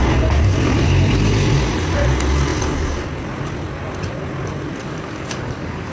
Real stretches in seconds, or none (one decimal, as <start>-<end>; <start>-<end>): 0.0-4.8